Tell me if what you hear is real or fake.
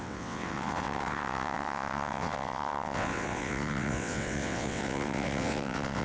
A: fake